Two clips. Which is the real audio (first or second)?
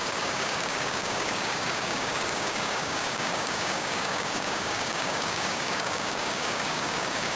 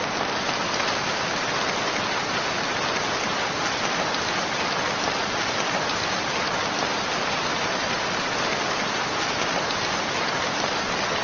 second